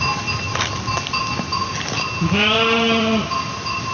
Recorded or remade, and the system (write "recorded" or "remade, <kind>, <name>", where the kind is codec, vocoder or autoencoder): recorded